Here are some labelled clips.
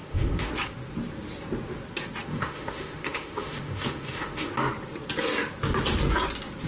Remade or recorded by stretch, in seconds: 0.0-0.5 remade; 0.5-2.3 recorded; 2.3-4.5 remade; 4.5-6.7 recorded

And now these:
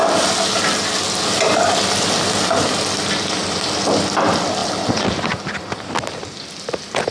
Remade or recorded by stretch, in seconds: 0.0-7.1 recorded

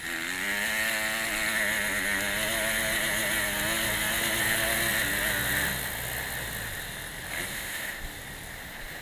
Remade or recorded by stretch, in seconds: 0.0-7.5 recorded; 7.5-8.0 remade; 8.0-9.0 recorded

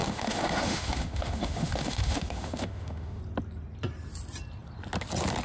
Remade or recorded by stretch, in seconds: 0.0-3.2 remade; 3.2-5.4 recorded

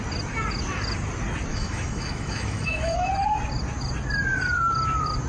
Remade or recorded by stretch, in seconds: 0.0-1.5 recorded; 1.5-3.1 remade; 3.1-5.3 recorded

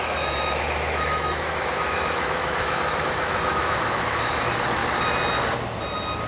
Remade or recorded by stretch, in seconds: 0.0-4.8 remade; 4.8-6.3 recorded

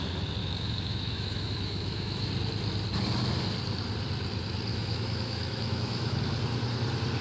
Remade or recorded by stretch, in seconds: 0.0-0.4 recorded; 0.4-2.3 remade; 2.3-4.7 recorded; 4.7-6.2 remade; 6.2-7.2 recorded

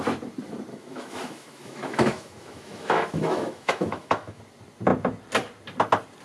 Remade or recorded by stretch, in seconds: 0.0-0.7 recorded; 0.7-4.4 remade; 4.4-6.2 recorded